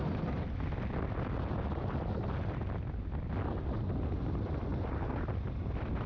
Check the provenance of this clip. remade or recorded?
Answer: recorded